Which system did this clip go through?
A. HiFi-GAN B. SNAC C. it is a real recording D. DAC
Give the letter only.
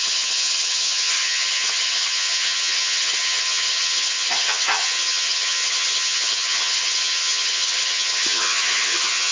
A